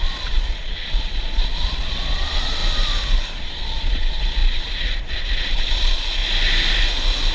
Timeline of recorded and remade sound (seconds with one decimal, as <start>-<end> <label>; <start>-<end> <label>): 0.0-2.6 remade; 2.6-3.4 recorded; 3.4-6.2 remade; 6.2-7.3 recorded